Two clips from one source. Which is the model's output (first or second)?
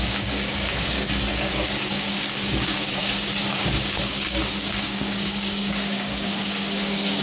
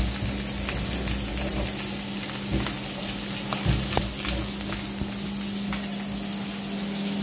first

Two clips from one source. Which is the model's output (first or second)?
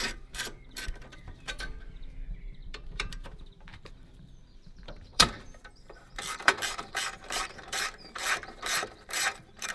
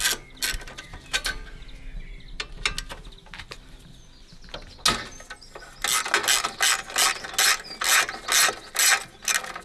first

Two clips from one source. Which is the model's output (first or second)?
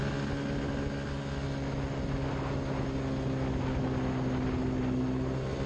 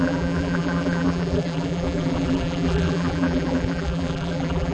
second